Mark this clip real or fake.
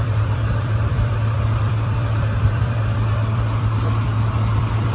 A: fake